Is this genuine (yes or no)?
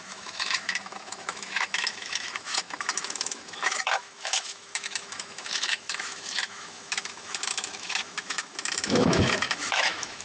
no